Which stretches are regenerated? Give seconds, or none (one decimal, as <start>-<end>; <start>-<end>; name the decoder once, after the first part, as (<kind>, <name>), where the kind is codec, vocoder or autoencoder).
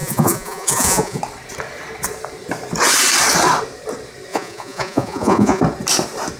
0.0-1.2 (vocoder, Vocos); 4.3-5.6